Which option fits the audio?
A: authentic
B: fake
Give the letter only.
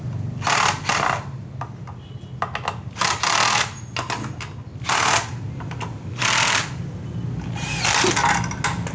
A